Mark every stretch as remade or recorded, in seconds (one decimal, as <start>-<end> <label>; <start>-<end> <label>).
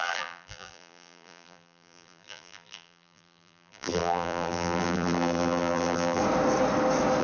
0.0-6.2 remade; 6.2-7.2 recorded